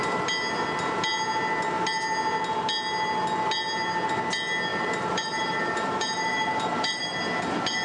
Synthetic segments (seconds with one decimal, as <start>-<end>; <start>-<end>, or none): 4.7-7.0